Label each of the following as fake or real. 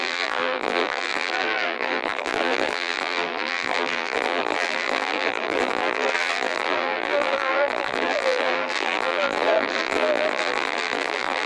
fake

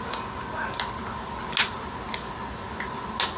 real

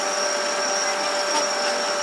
real